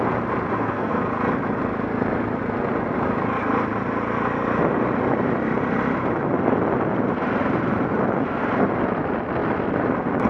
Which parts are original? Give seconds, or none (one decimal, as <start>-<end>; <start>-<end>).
0.0-0.5; 1.0-10.3